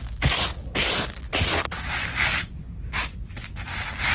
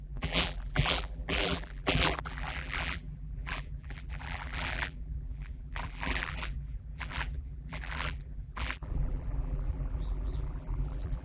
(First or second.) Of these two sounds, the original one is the first